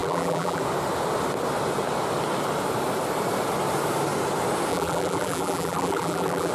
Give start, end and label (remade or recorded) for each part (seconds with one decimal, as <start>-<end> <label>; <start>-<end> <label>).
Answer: 0.0-0.6 remade; 0.6-4.7 recorded; 4.7-6.5 remade